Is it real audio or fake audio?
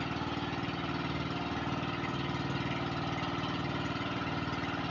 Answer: real